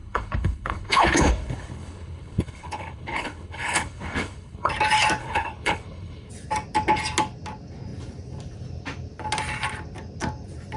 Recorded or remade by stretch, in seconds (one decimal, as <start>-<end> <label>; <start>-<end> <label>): 0.0-4.7 remade; 4.7-5.2 recorded; 5.2-6.3 remade; 6.3-10.8 recorded